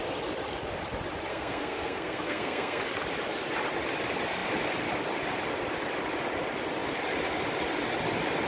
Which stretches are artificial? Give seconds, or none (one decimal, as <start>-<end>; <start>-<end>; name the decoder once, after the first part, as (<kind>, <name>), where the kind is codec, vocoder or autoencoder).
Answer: 1.3-2.8 (codec, SNAC)